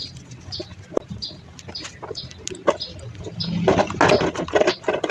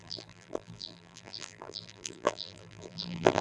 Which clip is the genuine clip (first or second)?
first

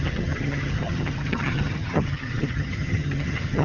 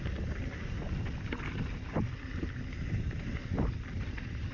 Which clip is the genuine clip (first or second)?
second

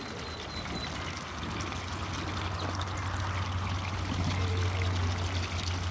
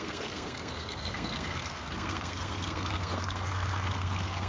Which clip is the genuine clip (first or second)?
first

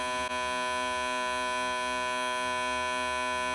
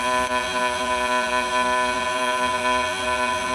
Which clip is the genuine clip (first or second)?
first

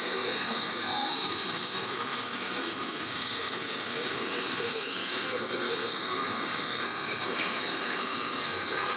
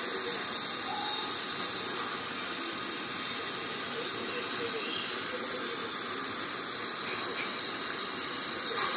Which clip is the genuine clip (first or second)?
second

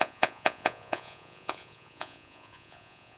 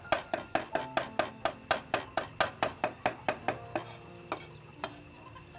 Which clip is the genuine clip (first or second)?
second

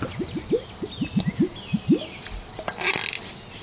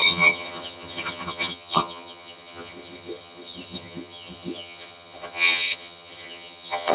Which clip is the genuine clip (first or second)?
first